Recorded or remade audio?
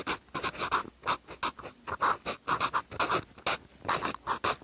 recorded